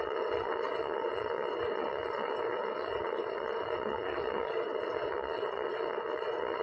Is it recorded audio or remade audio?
remade